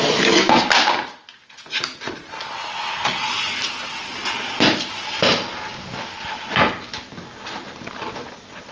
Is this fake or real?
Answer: real